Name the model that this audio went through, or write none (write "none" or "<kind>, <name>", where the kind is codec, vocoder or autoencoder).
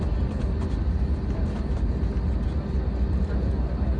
none